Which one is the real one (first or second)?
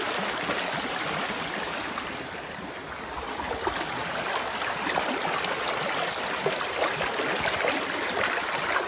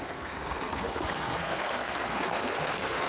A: first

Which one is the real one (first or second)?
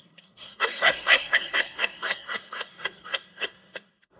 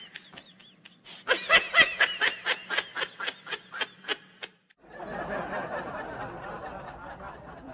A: second